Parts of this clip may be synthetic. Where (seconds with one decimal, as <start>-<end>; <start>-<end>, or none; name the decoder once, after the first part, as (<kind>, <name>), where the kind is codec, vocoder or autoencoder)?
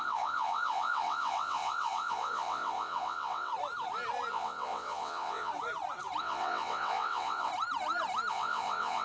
0.0-3.5 (vocoder, WaveNeXt); 4.3-5.5; 6.2-7.5; 8.3-9.0